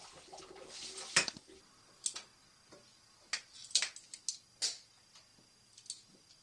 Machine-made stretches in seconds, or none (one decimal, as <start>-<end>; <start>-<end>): none